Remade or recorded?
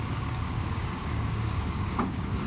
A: remade